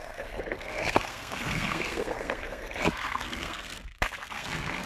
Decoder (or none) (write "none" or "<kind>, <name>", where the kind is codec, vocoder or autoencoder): codec, SNAC